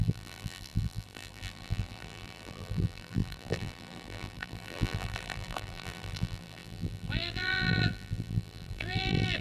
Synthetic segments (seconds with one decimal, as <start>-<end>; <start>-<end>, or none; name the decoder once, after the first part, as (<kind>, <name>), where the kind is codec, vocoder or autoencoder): 0.0-9.4 (vocoder, BigVGAN v2)

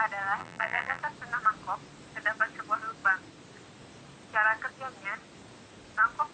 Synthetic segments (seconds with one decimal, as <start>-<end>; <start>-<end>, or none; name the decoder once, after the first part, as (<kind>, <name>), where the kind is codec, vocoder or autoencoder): 0.4-1.0 (vocoder, BigVGAN v2)

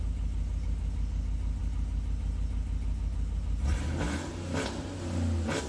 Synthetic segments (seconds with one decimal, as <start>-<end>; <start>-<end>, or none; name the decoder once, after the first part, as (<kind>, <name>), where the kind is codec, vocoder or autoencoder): none

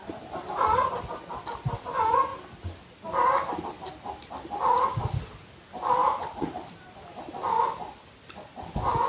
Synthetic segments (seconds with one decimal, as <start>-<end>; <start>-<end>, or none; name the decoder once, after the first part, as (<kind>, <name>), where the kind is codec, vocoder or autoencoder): 6.0-6.8 (vocoder, BigVGAN v2)